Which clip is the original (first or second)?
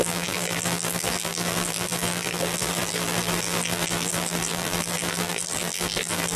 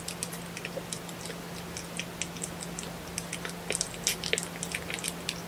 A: second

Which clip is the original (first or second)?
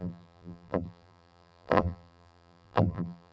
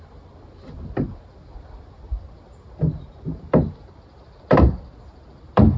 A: second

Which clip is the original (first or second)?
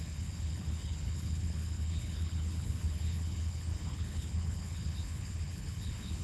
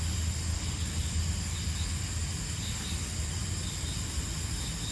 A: second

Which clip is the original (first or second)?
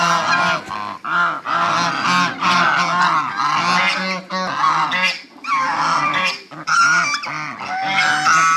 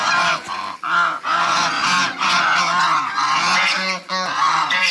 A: first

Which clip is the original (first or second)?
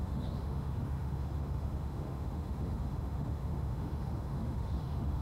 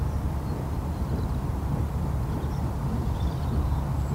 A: second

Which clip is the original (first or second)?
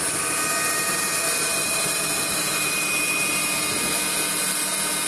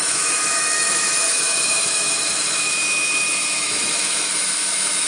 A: first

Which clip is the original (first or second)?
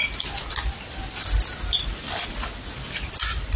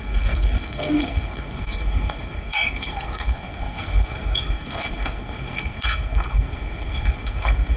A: first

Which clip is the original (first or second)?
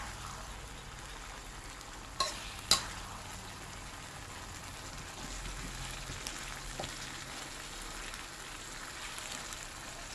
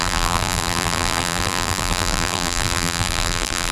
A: first